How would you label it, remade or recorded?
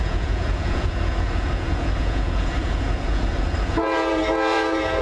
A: remade